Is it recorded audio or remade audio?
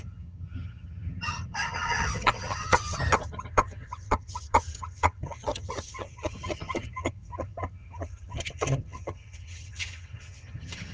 remade